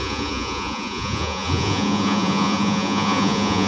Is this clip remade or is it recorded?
remade